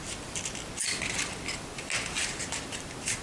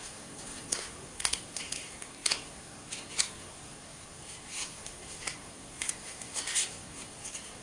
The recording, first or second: first